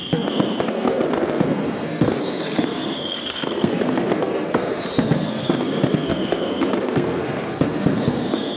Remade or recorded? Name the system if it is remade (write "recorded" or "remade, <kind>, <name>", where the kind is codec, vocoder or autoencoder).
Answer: remade, codec, SNAC